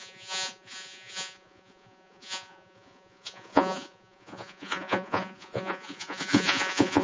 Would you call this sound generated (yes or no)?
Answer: yes